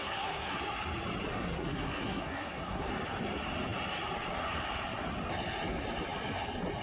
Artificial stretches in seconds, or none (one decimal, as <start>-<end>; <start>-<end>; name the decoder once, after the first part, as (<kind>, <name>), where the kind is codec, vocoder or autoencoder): 0.0-0.6 (codec, SNAC); 1.3-2.9